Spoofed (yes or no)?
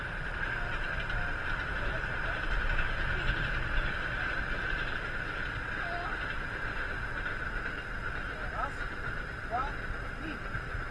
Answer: no